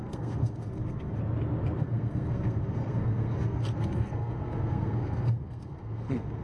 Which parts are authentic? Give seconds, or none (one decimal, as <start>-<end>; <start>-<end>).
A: 1.2-1.8